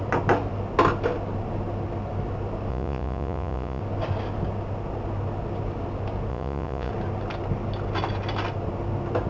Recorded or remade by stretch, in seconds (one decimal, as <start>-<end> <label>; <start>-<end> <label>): 0.0-2.7 recorded; 2.7-3.8 remade; 3.8-6.3 recorded; 6.3-6.9 remade; 6.9-9.3 recorded

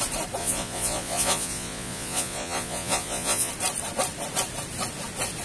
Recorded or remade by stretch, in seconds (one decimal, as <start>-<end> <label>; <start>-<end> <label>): 0.0-0.4 recorded; 0.4-3.5 remade; 3.5-5.4 recorded

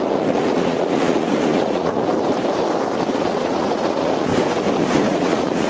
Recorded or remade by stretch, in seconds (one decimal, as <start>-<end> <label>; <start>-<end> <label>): 0.0-2.1 remade; 2.1-3.1 recorded; 3.1-4.3 remade; 4.3-4.8 recorded; 4.8-5.7 remade

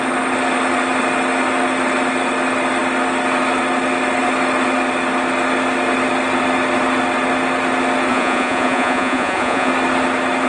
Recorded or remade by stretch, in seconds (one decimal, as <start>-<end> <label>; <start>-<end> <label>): 0.0-8.1 recorded; 8.1-9.7 remade; 9.7-10.5 recorded

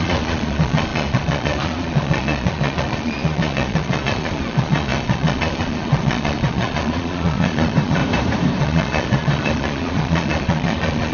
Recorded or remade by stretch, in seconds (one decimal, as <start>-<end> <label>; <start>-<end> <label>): 0.0-8.0 remade; 8.0-8.6 recorded; 8.6-11.1 remade